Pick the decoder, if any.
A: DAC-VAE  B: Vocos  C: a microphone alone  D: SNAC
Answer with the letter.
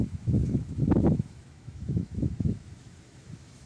A